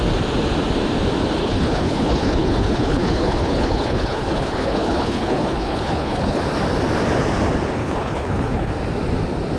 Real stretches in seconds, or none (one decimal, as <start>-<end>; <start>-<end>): 0.0-1.4; 6.4-7.8; 8.7-9.6